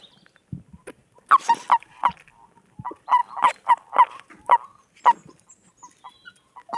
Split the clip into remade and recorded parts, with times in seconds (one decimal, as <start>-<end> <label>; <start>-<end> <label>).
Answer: 0.0-6.8 recorded